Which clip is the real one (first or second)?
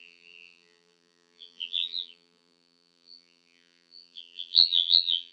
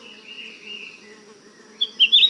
second